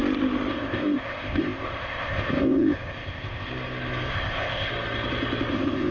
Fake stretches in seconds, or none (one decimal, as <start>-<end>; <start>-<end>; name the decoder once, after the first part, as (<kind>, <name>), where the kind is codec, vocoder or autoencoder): 0.5-3.5 (codec, ZipCodec); 4.1-4.7; 5.5-5.9